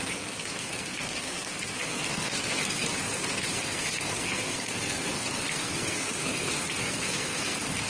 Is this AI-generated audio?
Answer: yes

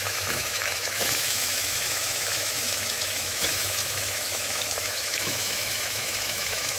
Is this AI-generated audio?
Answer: yes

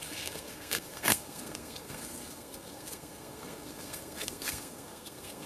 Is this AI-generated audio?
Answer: yes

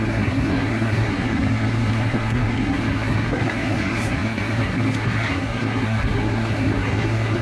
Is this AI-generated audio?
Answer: yes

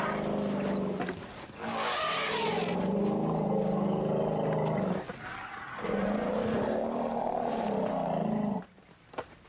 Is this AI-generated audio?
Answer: no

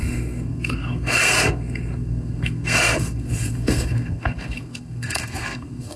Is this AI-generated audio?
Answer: yes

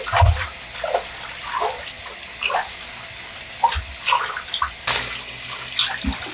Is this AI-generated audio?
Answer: no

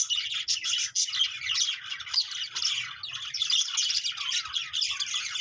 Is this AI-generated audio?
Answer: no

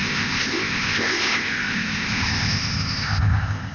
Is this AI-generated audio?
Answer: yes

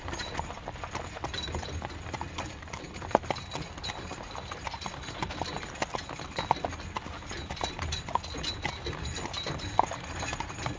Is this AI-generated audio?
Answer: no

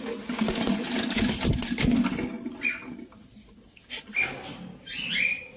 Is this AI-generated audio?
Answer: no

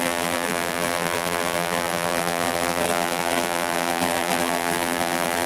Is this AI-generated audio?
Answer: yes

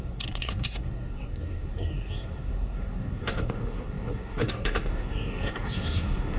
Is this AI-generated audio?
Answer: yes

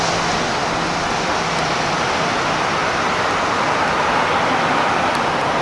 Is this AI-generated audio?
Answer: no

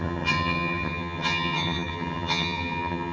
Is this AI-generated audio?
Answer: yes